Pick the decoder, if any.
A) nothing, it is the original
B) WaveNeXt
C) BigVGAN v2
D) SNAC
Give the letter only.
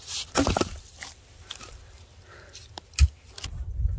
A